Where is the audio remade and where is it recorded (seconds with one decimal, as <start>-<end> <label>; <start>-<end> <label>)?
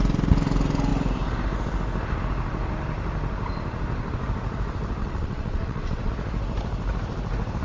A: 0.0-5.0 recorded; 5.0-6.1 remade; 6.1-7.6 recorded